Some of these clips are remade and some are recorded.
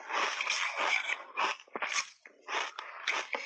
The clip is recorded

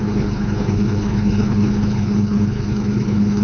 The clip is remade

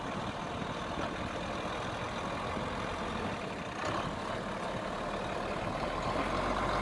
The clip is recorded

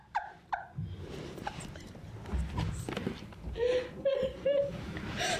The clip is remade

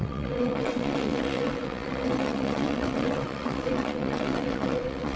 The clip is remade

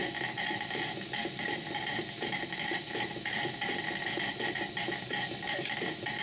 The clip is recorded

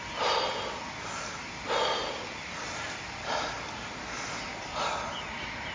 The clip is recorded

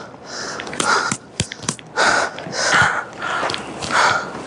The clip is recorded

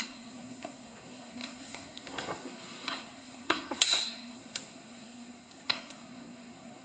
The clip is remade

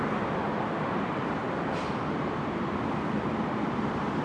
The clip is remade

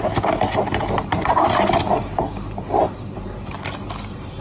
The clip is recorded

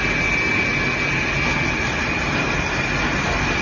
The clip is recorded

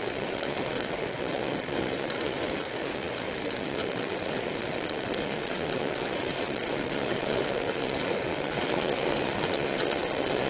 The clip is remade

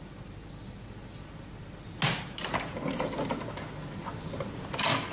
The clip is recorded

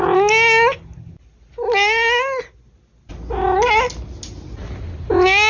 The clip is recorded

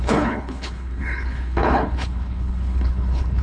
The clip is remade